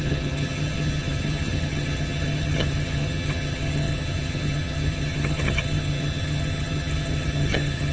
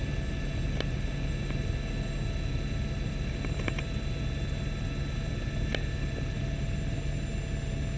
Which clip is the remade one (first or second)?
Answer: first